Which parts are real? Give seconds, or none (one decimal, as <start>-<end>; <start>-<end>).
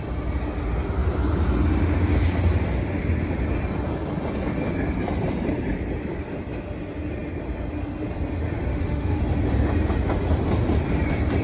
0.0-8.7; 9.2-11.4